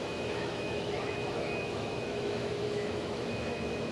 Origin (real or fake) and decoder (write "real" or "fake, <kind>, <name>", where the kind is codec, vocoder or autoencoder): fake, autoencoder, DAC-VAE